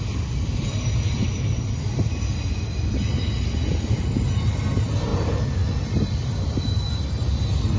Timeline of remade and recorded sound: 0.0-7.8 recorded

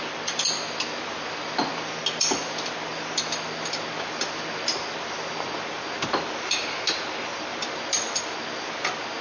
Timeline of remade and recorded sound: 0.0-9.2 recorded

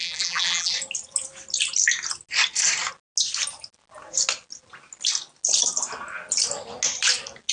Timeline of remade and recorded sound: 0.0-0.7 remade; 0.7-7.5 recorded